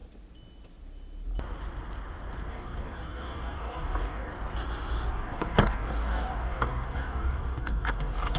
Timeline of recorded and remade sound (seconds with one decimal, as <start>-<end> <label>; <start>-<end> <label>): 0.0-2.5 recorded; 2.5-4.3 remade; 4.3-5.1 recorded; 5.1-8.4 remade